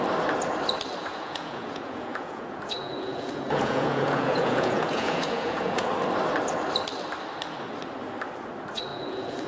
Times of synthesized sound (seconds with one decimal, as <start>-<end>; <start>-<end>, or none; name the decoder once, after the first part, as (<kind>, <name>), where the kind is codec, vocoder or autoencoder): 1.0-5.9 (vocoder, Vocos); 8.9-9.5